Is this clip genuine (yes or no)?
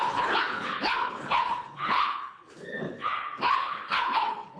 no